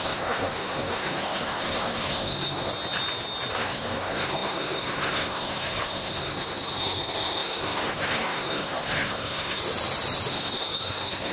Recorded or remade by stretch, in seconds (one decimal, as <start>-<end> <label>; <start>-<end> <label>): 0.0-2.7 remade; 2.7-3.5 recorded; 3.5-9.6 remade; 9.6-10.3 recorded; 10.3-11.3 remade